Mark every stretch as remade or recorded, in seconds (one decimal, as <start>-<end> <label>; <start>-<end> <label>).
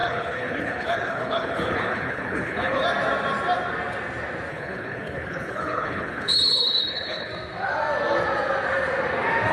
0.0-2.8 remade; 2.8-4.5 recorded; 4.5-7.3 remade; 7.3-9.5 recorded